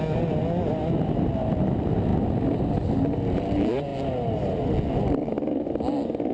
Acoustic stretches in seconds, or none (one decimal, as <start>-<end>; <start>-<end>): 0.0-6.3